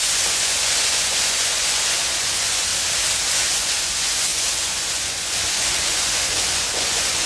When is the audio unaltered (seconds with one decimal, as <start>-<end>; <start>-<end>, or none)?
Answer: 2.7-3.3